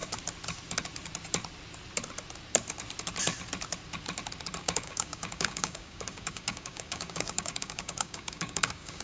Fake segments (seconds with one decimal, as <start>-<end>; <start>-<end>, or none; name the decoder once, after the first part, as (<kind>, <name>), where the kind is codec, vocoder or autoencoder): 4.6-9.0 (codec, DAC)